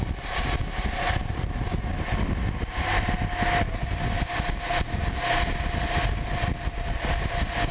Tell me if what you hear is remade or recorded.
recorded